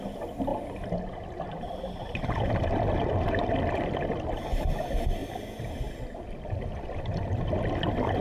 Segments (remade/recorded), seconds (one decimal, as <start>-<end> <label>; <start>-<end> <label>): 0.0-8.2 recorded